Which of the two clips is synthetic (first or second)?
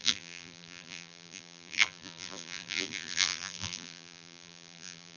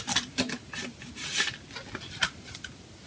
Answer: first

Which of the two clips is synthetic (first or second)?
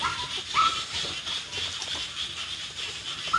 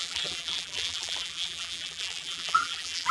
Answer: second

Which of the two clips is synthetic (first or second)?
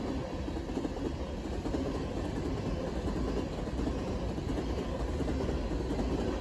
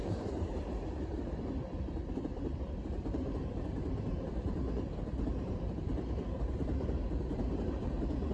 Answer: second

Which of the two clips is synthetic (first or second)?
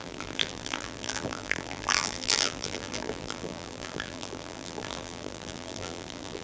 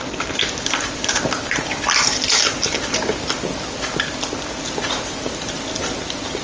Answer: first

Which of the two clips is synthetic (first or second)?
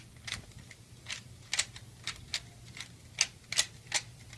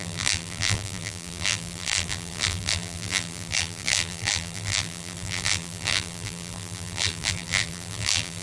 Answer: second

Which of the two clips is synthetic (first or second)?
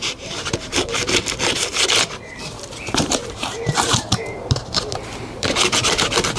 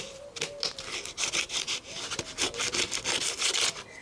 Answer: first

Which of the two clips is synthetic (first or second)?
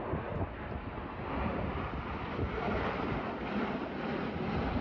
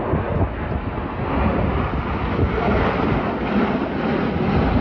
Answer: first